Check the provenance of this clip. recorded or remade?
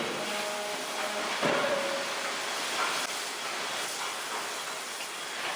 recorded